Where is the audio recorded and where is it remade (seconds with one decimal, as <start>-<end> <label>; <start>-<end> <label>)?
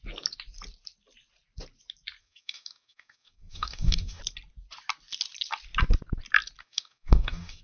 0.0-2.2 recorded; 2.2-4.2 remade; 4.2-6.6 recorded; 6.6-7.6 remade